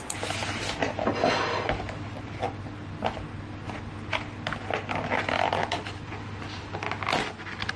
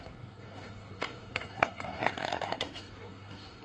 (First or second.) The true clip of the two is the first